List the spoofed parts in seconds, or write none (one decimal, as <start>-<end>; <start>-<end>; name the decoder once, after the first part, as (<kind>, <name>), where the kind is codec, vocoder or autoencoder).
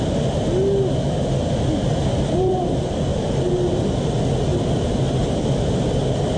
1.8-3.5 (vocoder, BigVGAN v2); 4.5-5.4